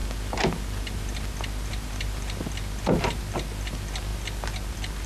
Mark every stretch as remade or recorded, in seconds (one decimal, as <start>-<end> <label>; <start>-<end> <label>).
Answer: 0.0-5.1 recorded